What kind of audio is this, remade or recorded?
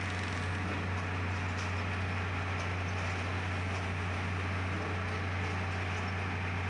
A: recorded